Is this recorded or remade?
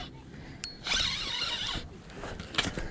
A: recorded